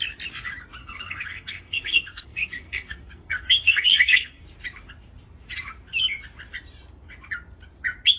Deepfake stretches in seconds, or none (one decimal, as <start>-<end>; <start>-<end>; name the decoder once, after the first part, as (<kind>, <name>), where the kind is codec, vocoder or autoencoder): 0.8-4.4 (codec, SNAC)